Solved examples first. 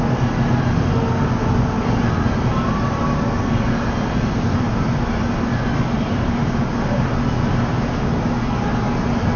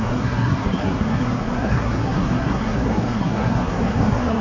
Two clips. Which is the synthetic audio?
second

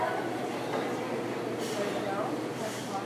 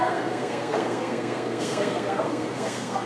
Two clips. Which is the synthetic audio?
second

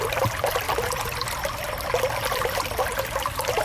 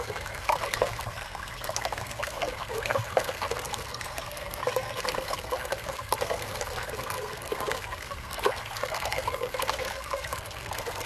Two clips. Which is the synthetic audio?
second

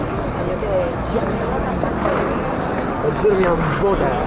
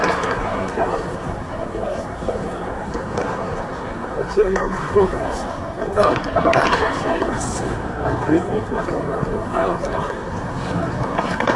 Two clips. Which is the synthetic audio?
second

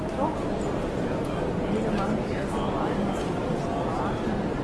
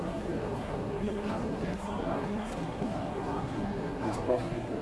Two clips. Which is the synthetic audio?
second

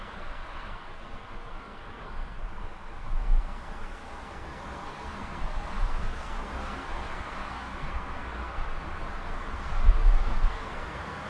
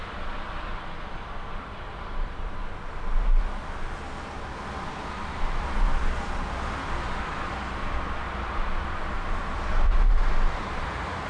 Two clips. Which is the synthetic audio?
first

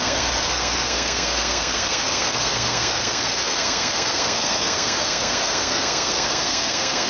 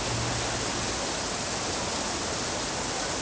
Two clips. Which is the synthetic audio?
first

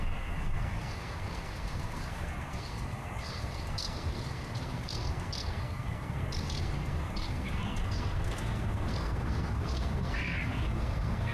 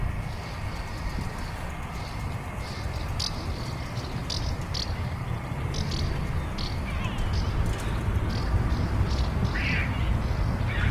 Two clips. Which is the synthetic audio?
first